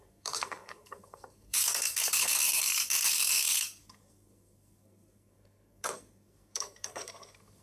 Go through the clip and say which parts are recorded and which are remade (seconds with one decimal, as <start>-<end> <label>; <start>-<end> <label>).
0.0-7.6 remade